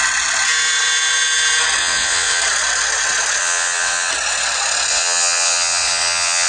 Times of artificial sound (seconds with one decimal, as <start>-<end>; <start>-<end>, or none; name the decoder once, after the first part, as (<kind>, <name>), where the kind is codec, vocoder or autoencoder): 1.8-2.4 (vocoder, WaveNeXt); 3.4-4.1; 4.9-6.5